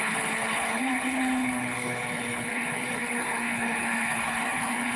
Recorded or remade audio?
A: remade